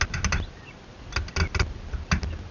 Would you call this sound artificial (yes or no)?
no